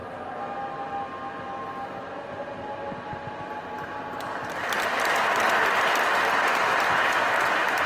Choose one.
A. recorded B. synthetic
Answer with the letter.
A